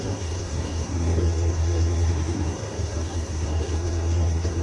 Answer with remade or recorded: remade